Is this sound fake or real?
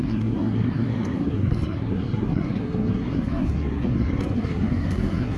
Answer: fake